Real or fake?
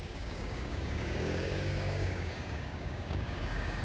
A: fake